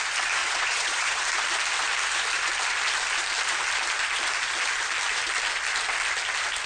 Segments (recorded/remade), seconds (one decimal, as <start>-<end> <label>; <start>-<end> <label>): 0.0-0.4 recorded; 0.4-1.2 remade; 1.2-6.7 recorded